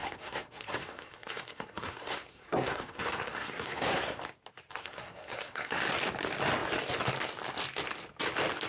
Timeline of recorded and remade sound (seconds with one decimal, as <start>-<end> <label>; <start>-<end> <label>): 0.0-4.2 remade; 4.2-4.8 recorded; 4.8-5.8 remade; 5.8-8.7 recorded